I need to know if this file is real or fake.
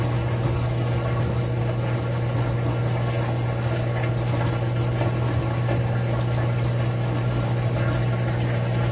real